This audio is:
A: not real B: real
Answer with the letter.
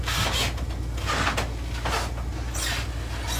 B